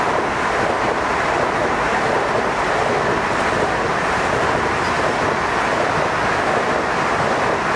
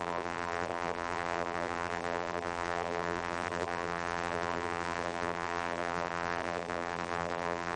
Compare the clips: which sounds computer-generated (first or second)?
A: second